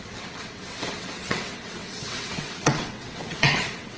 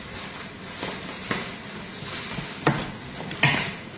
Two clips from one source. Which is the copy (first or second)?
first